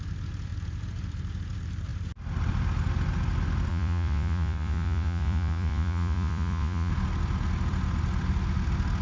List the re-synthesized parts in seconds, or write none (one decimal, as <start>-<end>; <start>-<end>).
3.7-6.9